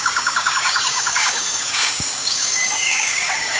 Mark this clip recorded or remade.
remade